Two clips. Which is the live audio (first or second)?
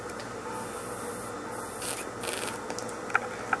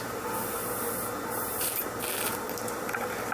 first